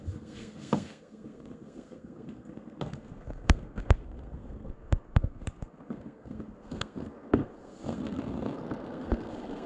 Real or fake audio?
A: fake